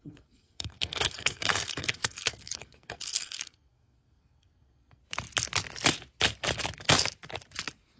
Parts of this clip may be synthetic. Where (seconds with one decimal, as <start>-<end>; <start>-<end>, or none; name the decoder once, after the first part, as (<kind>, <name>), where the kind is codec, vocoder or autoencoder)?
0.0-5.0 (codec, SNAC)